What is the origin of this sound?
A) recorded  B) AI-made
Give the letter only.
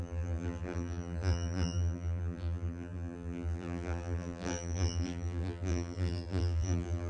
B